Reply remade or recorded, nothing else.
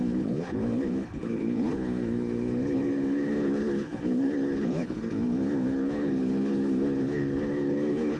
remade